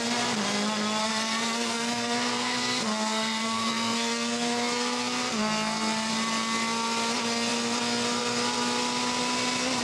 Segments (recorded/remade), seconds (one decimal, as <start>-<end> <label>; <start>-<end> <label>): 0.0-1.0 recorded; 1.0-6.1 remade; 6.1-9.8 recorded